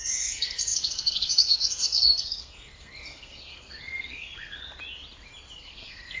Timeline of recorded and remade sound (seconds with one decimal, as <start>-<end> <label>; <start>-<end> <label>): 0.0-4.6 remade; 4.6-5.6 recorded; 5.6-6.2 remade